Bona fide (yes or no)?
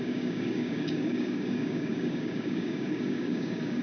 no